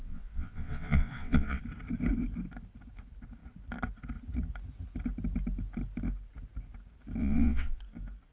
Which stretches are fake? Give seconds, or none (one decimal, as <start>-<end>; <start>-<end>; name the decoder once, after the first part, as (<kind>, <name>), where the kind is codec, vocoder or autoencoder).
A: 0.0-1.6 (vocoder, WaveNeXt); 7.2-7.8